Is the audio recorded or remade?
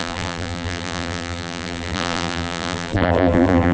remade